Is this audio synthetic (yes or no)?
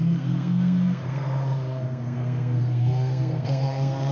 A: yes